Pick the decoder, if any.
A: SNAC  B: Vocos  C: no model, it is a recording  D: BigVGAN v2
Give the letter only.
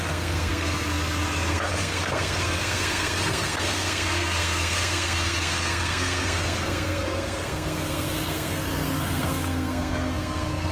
A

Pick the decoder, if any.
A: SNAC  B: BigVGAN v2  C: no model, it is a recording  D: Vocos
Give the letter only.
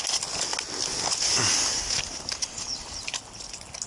C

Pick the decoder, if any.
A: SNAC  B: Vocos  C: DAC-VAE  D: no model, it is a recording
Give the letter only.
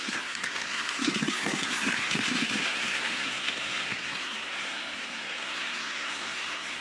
A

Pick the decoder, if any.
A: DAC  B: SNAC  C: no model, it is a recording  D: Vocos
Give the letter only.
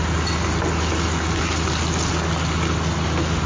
C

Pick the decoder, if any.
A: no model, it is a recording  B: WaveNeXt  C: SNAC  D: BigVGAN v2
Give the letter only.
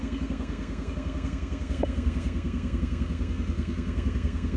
C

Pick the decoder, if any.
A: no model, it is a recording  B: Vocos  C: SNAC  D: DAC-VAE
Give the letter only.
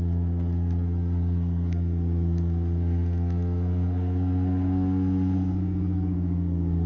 C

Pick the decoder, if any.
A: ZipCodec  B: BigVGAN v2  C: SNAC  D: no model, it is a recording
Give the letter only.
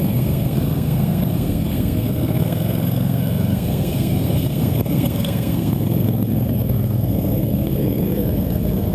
C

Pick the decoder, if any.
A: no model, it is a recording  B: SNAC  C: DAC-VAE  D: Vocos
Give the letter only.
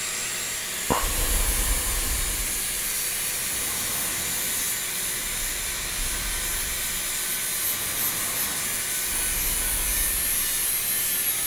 A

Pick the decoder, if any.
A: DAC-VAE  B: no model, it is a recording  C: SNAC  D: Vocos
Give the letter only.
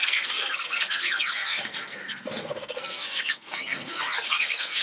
C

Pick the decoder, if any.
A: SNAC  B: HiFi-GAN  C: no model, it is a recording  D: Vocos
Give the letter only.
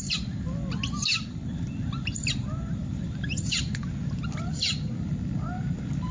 C